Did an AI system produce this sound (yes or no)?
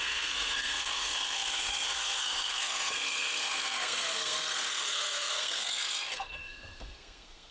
yes